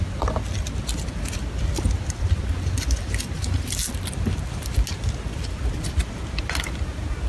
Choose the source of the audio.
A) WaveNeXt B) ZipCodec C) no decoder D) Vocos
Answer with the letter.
C